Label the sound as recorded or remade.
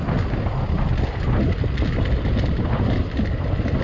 recorded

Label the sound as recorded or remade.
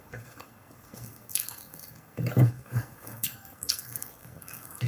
remade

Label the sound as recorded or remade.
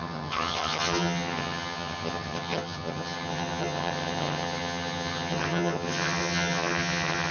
remade